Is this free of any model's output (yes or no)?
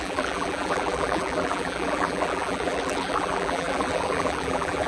no